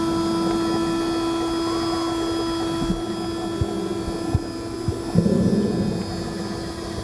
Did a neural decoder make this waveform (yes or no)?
no